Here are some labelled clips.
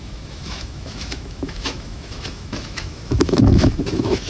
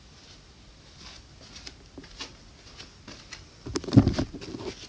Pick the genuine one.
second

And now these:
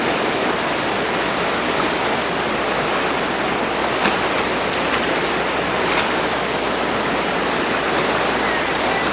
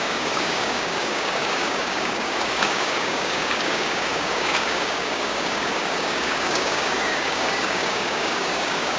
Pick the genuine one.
first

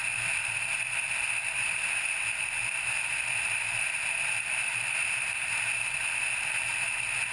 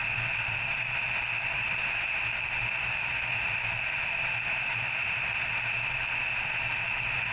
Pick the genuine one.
second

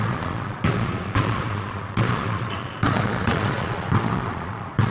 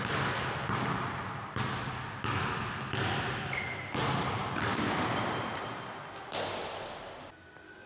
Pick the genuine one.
second